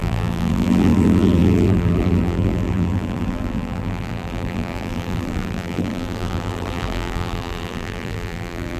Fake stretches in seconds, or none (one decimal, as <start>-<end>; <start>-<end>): 0.0-8.8